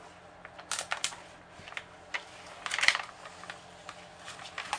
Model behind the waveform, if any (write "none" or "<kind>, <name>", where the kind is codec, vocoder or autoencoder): none